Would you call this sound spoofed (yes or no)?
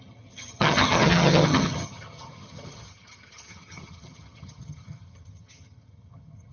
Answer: yes